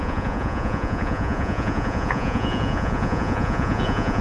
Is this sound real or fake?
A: fake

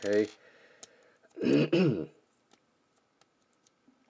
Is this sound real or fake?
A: real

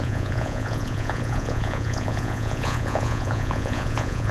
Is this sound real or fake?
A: fake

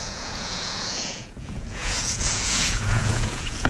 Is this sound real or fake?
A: fake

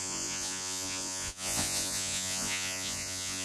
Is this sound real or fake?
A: fake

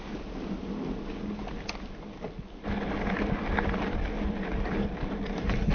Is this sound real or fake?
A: real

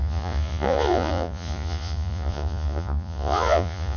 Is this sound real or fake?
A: fake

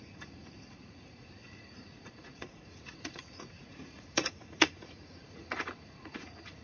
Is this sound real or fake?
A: fake